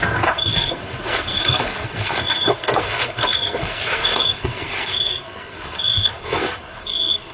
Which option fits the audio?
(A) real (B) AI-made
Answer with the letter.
B